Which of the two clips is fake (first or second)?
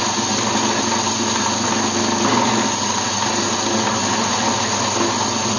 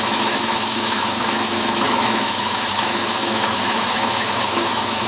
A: second